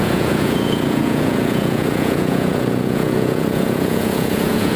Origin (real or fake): fake